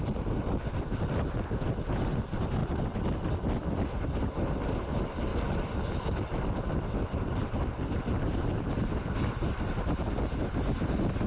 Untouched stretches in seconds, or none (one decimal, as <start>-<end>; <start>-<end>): 0.0-11.3